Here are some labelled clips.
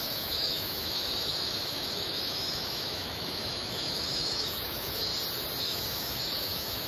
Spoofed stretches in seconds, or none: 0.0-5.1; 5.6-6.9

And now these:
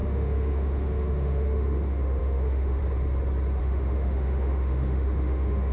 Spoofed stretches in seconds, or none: 0.0-2.8; 3.6-5.7

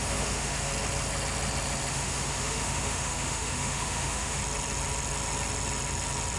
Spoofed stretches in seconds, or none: 0.0-0.7; 1.9-4.4

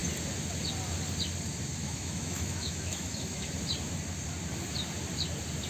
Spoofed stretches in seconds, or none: 1.8-3.5

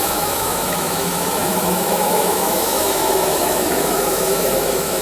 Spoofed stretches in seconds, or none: 0.0-5.0

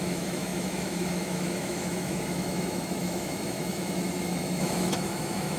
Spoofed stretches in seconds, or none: 0.0-5.6